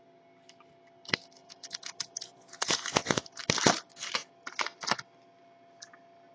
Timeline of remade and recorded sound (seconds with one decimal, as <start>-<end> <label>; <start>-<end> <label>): 0.0-1.4 recorded; 1.4-3.4 remade; 3.4-6.3 recorded